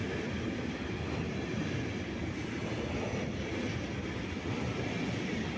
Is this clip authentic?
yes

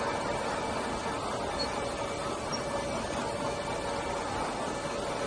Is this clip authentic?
yes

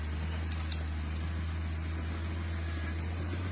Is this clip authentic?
yes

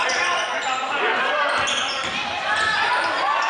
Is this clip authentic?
no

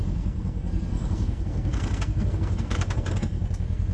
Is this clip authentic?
no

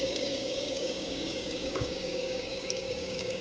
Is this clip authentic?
no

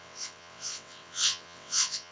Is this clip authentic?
no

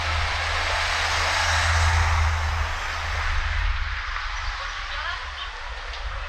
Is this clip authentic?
yes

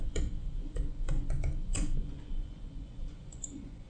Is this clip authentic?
no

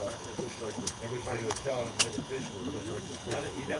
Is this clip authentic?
no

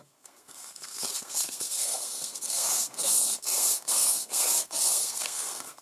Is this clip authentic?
no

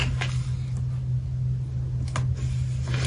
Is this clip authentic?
yes